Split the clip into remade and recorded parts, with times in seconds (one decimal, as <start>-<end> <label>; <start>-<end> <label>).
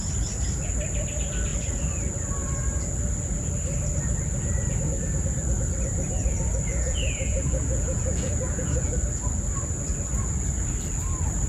0.0-6.7 recorded; 6.7-8.9 remade; 8.9-11.5 recorded